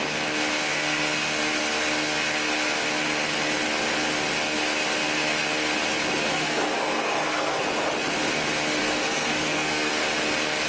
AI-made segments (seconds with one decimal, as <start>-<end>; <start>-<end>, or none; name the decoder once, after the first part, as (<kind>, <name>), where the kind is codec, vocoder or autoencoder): 6.3-7.6 (codec, SNAC); 8.8-9.9